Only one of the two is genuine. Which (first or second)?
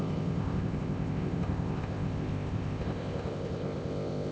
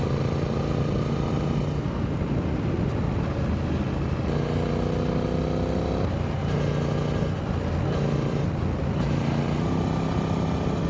second